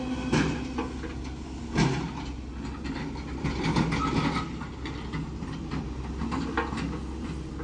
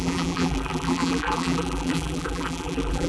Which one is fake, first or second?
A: second